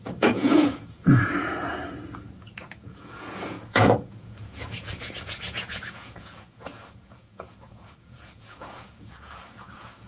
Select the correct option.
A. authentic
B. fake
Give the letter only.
B